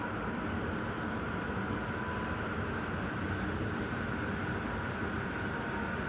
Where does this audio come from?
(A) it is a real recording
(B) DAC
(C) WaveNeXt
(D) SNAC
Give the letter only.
A